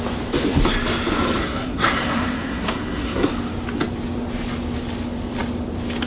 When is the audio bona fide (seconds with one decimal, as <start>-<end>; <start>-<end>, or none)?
0.0-1.4; 3.3-6.1